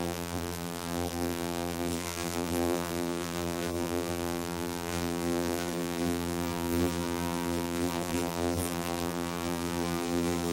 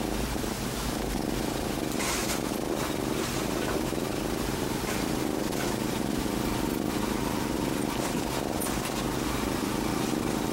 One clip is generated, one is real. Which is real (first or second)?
second